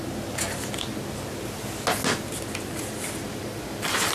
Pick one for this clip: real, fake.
real